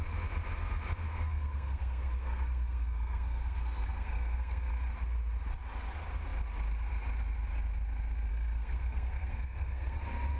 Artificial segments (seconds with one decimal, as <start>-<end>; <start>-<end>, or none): 1.1-4.7; 8.3-10.0